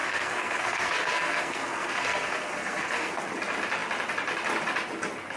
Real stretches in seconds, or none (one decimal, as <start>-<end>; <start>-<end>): 3.2-5.4